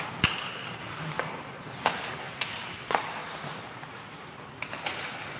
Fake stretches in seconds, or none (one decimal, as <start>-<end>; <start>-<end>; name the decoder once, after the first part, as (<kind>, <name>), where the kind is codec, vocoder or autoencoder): 3.2-4.5 (vocoder, Vocos)